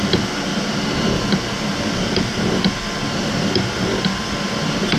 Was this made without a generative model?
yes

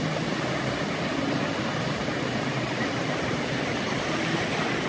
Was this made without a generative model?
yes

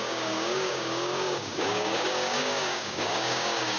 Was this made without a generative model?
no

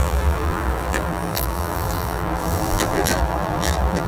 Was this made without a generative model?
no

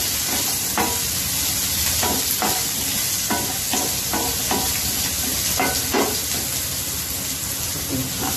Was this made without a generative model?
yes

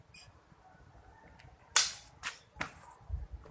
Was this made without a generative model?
yes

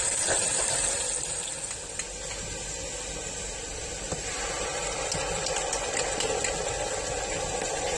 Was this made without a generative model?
yes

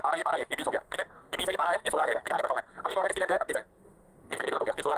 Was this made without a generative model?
no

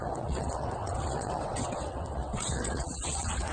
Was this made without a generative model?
no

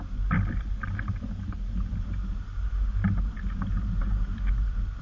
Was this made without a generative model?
yes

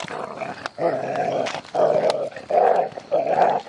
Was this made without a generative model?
yes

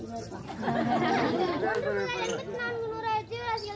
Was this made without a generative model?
yes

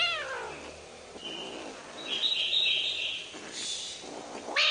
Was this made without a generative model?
yes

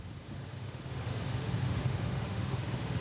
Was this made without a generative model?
no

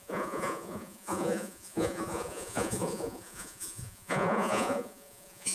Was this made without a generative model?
no